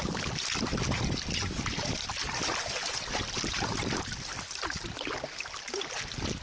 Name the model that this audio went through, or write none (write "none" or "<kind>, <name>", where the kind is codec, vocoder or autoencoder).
none